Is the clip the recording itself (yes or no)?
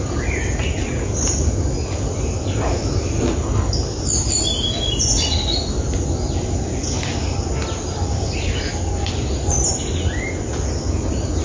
yes